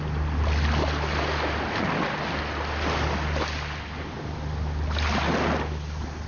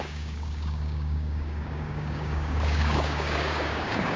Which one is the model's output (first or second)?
second